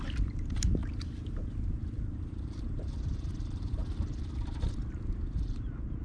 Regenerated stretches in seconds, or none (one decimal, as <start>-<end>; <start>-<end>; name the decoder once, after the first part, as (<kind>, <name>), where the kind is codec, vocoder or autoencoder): 0.0-0.8 (vocoder, BigVGAN v2); 2.2-3.8; 5.4-6.0